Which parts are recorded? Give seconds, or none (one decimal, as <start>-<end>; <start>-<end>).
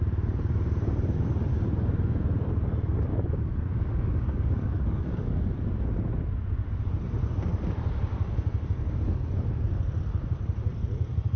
0.0-3.1; 5.5-11.4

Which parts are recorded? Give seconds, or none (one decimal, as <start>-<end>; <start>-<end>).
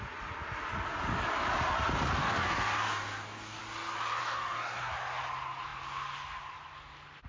0.0-2.2; 3.6-4.2; 4.9-7.3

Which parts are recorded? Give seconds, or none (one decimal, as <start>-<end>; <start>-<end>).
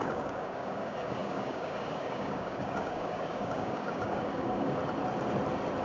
4.8-5.8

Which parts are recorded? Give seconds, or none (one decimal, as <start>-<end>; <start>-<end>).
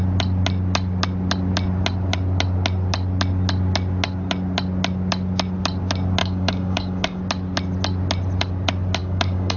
0.0-6.2; 7.2-9.0